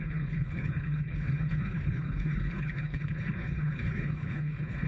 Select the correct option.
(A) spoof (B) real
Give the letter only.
A